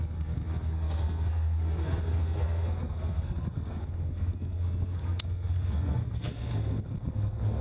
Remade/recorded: remade